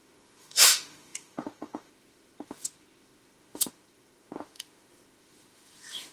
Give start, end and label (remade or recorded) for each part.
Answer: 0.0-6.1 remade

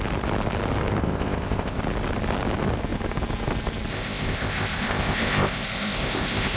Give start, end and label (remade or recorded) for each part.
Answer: 0.0-1.0 recorded; 1.0-1.8 remade; 1.8-3.9 recorded; 3.9-6.6 remade

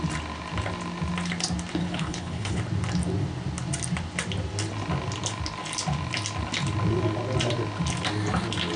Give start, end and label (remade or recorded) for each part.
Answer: 0.0-1.8 recorded; 1.8-2.6 remade; 2.6-8.8 recorded